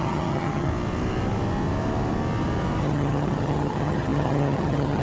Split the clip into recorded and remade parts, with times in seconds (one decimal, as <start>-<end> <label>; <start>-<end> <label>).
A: 0.0-0.7 remade; 0.7-2.8 recorded; 2.8-5.0 remade